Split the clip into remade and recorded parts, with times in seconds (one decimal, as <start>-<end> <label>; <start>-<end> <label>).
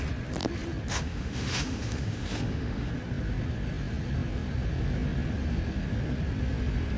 0.0-0.9 recorded; 0.9-2.9 remade; 2.9-7.0 recorded